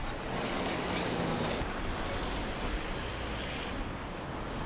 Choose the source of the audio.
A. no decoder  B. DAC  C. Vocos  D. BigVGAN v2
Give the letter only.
A